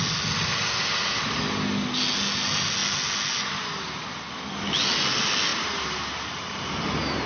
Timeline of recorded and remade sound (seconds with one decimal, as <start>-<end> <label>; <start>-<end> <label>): 0.0-5.5 recorded; 5.5-6.7 remade; 6.7-7.3 recorded